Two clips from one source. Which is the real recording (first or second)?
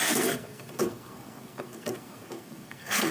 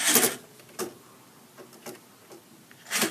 second